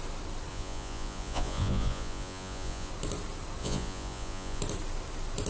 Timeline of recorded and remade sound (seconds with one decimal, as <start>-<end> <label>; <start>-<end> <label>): 0.0-0.5 recorded; 0.5-2.9 remade; 2.9-3.6 recorded; 3.6-4.6 remade; 4.6-5.5 recorded